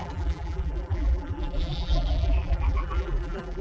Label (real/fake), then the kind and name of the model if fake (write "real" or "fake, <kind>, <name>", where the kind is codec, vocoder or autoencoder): fake, vocoder, BigVGAN v2